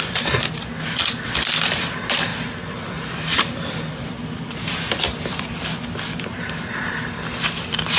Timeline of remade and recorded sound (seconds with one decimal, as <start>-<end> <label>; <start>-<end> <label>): 0.0-8.0 recorded